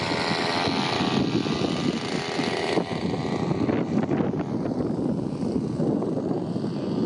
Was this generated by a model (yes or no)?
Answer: no